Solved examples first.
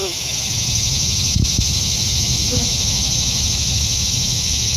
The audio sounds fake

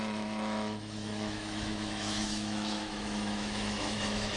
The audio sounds fake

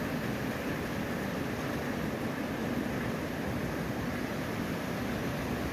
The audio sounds real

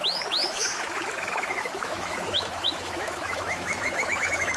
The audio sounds fake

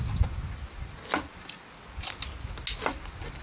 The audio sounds real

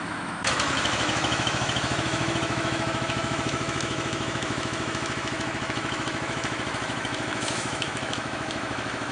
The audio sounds fake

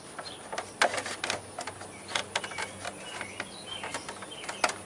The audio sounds real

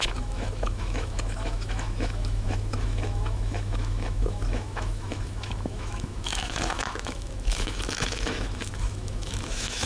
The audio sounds fake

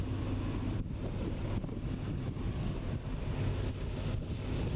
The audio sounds real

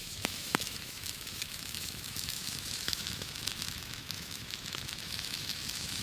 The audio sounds fake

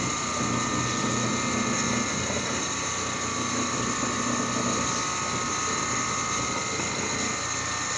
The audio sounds real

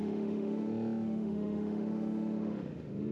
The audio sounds fake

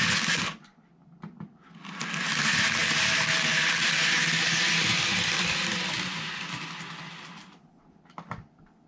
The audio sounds real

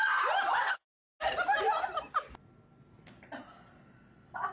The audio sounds real